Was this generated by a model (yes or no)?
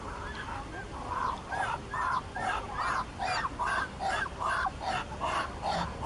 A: no